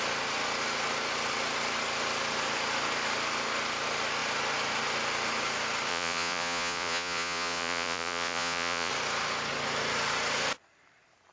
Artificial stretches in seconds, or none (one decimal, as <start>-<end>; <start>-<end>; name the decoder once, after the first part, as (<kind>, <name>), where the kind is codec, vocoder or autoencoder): 5.9-8.9 (vocoder, Vocos)